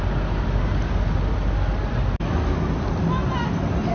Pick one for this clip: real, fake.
real